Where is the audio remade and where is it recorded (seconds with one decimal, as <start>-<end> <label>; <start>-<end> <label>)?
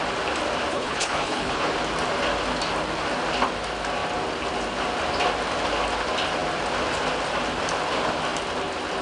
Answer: 0.0-0.7 recorded; 0.7-1.7 remade; 1.7-9.0 recorded